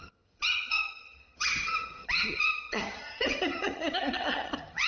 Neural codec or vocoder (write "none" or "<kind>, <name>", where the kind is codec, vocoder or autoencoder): vocoder, HiFi-GAN